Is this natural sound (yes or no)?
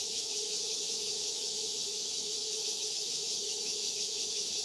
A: no